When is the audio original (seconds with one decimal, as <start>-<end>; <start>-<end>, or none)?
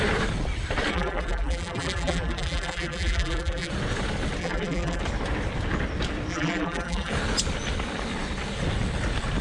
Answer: 0.0-0.9; 3.7-4.4; 5.0-6.3; 7.1-9.4